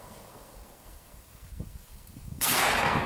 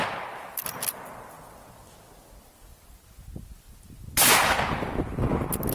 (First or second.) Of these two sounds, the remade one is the first